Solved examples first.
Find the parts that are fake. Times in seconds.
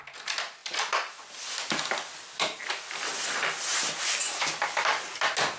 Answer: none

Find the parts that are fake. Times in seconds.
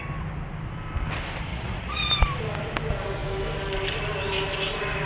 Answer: 1.5-2.1 (vocoder, Vocos)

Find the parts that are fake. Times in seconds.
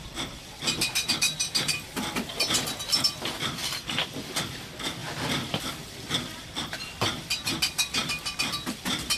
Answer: 0.0-9.2 (vocoder, BigVGAN v2)